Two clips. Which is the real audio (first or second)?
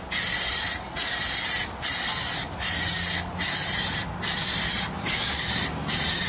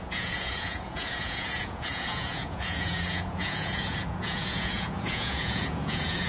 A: first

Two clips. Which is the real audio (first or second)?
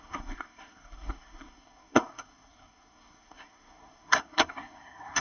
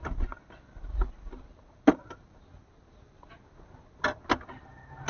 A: second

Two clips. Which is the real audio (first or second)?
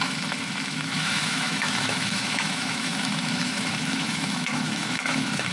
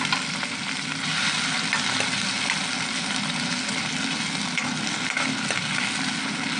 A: second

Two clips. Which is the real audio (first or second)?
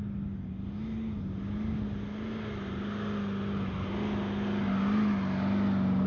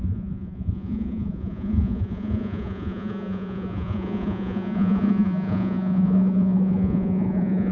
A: first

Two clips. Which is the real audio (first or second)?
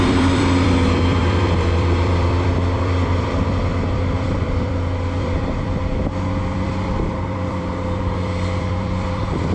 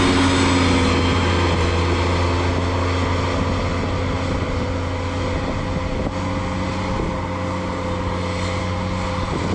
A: second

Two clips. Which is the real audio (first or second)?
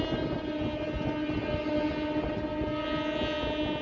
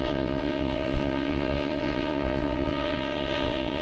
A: first